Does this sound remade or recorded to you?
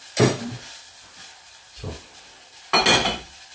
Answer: recorded